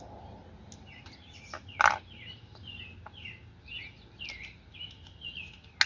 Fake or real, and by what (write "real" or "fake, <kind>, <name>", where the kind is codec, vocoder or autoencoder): real